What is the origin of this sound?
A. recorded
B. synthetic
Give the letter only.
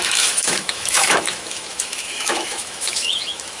B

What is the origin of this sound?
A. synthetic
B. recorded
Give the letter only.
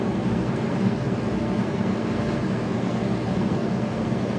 A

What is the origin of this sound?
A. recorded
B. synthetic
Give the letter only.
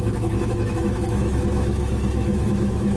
B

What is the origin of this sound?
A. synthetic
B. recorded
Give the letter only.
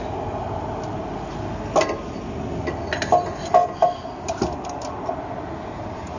B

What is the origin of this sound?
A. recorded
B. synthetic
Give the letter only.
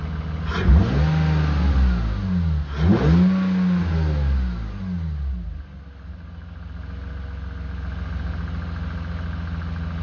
A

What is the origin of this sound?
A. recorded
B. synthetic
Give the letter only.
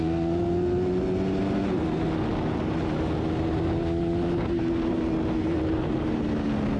A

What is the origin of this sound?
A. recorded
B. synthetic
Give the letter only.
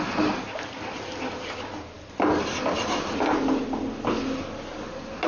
A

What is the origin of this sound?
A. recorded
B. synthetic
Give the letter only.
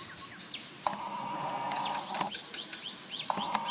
A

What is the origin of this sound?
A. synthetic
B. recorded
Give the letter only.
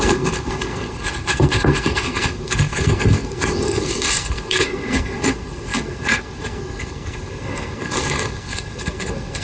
A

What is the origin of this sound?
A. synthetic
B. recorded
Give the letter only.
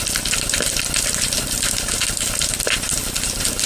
B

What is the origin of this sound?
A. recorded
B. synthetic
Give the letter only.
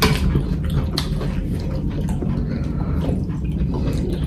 A